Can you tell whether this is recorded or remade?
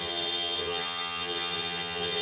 remade